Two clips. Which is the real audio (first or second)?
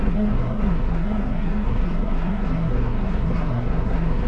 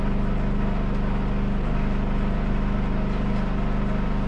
second